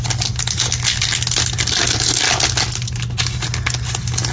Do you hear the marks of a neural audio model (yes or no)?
no